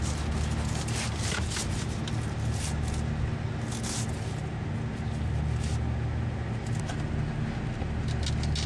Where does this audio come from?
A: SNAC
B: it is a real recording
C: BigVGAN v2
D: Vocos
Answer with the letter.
B